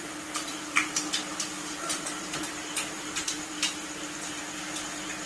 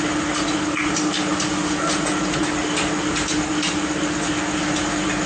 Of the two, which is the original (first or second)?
second